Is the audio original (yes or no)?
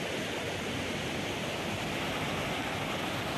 yes